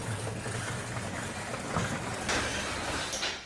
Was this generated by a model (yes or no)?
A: no